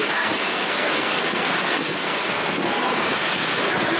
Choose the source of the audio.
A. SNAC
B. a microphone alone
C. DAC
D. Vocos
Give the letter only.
A